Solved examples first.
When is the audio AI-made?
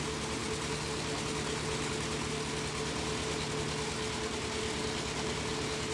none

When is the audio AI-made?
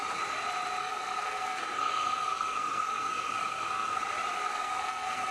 0.8-4.0 (codec, SNAC); 4.5-5.3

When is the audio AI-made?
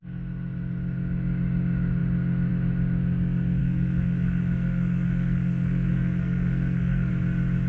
3.6-7.1 (codec, SNAC)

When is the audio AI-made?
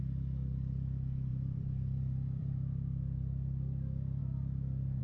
1.3-2.5 (vocoder, BigVGAN v2)